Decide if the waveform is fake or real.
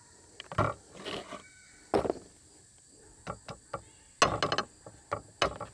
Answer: real